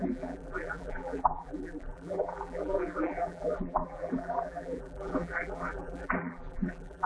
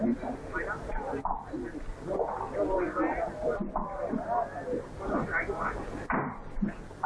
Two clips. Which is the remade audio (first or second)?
first